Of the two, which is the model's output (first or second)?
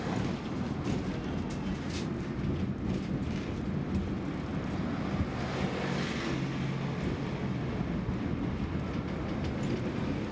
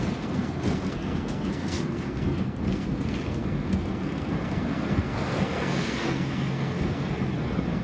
second